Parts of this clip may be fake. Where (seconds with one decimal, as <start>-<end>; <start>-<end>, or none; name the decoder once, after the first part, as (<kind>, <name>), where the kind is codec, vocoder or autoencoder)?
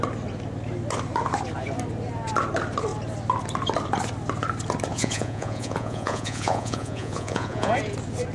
4.9-7.7 (vocoder, Vocos)